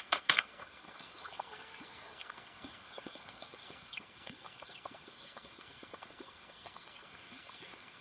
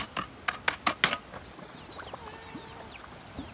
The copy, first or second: first